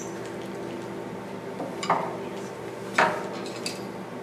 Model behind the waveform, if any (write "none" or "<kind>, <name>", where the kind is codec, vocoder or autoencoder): none